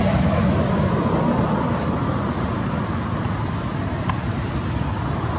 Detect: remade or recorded remade